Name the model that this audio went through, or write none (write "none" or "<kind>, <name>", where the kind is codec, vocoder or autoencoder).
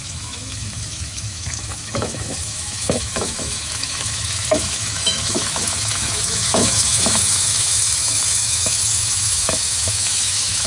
autoencoder, DAC-VAE